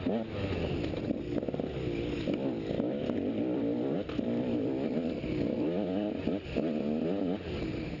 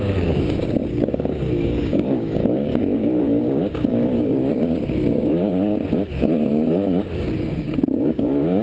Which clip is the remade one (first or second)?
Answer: second